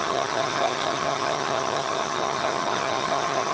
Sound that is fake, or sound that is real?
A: fake